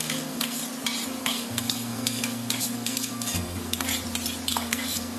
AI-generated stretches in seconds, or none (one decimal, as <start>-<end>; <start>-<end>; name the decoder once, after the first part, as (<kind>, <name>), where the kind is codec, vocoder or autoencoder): 0.0-0.6 (codec, SNAC); 1.2-3.9; 4.5-5.2